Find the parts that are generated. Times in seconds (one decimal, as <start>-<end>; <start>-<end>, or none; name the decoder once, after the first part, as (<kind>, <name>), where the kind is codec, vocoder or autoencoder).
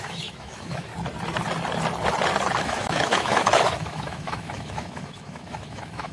0.0-0.9 (autoencoder, DAC-VAE); 2.6-6.1